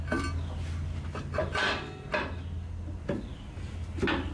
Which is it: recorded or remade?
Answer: recorded